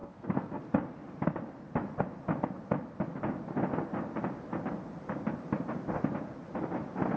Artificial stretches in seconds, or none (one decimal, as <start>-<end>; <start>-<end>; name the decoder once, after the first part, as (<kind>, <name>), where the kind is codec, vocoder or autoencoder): 0.0-0.6 (codec, SNAC)